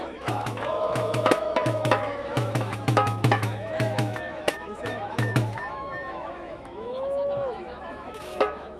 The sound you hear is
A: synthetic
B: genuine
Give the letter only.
A